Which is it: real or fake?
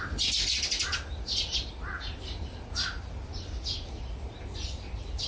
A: real